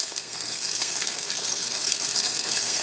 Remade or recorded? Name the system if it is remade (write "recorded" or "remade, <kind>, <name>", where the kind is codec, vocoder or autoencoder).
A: remade, codec, SNAC